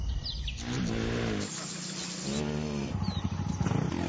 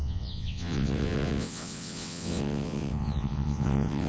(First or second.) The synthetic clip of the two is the second